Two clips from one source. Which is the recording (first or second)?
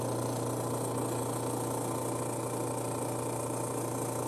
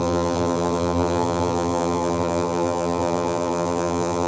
first